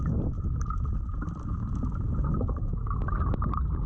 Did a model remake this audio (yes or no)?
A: no